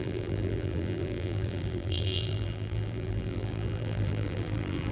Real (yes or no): no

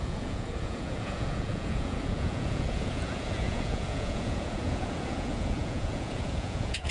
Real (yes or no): no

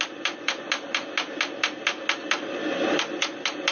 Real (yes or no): yes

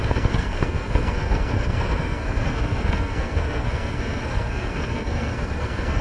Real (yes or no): no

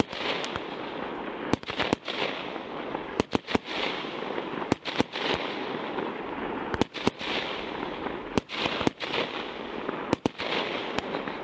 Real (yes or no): yes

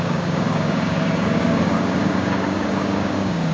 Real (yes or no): no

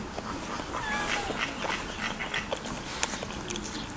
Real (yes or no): yes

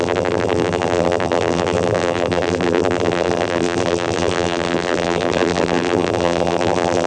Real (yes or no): no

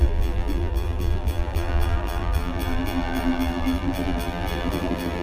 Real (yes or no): no